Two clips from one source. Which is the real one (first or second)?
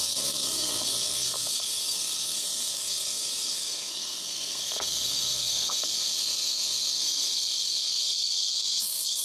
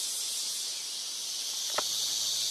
second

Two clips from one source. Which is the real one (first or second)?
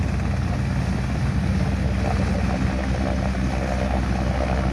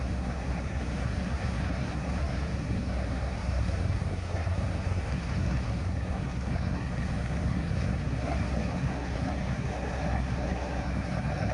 first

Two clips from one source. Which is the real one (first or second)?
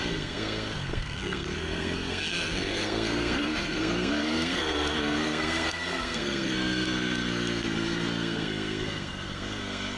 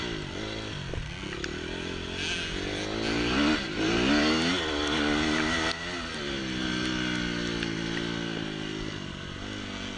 second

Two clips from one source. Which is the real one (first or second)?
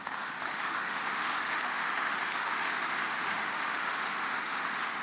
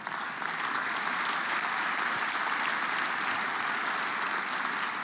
second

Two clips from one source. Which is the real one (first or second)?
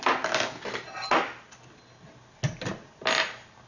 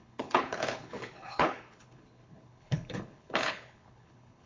first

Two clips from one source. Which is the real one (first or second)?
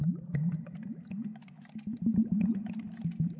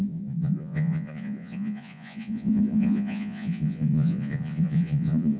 first